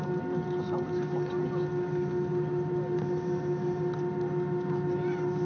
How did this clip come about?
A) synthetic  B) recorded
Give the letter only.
B